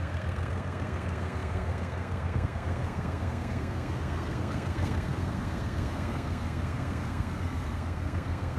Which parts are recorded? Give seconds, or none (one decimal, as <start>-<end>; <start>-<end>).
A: none